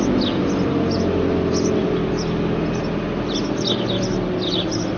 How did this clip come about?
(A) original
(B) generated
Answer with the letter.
A